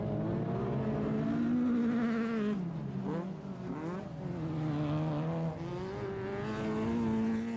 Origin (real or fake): real